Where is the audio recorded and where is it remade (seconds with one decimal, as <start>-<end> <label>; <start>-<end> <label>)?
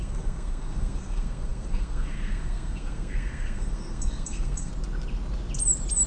0.0-4.7 remade; 4.7-6.1 recorded